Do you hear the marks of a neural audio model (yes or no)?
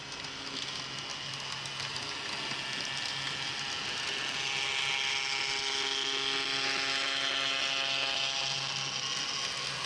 no